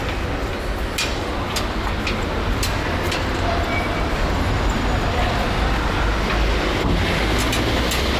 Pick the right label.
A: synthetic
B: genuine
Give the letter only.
B